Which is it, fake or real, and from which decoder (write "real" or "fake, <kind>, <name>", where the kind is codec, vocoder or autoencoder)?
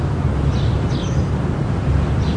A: real